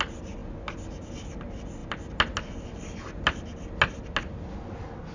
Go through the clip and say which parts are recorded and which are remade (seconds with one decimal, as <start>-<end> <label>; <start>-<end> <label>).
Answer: 0.0-5.1 recorded